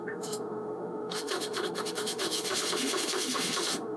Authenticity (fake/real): fake